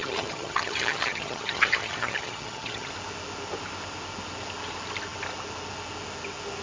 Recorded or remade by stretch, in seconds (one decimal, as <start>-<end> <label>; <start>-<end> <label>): 0.0-2.9 remade; 2.9-6.6 recorded

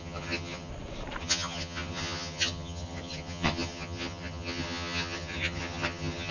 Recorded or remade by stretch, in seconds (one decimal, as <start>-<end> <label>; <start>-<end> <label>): 0.0-0.7 remade; 0.7-1.2 recorded; 1.2-6.3 remade

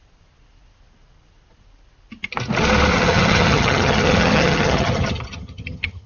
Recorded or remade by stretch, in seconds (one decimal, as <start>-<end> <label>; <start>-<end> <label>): 0.0-2.9 recorded; 2.9-6.1 remade

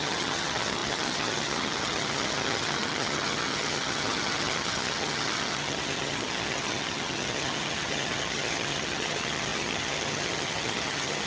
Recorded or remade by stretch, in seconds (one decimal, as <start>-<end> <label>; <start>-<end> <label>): 0.0-11.3 remade